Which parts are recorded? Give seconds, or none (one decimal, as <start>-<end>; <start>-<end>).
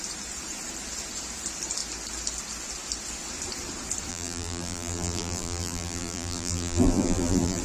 0.0-4.1